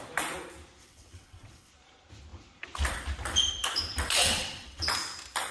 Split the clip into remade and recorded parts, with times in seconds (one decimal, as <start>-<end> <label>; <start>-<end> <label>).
0.0-0.8 recorded; 0.8-1.7 remade; 1.7-4.2 recorded; 4.2-4.9 remade; 4.9-5.5 recorded